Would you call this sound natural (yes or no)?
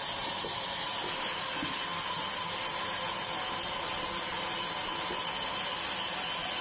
yes